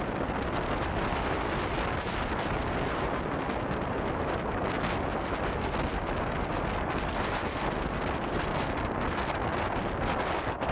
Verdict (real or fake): real